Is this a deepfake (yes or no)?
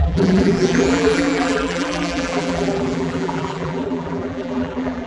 yes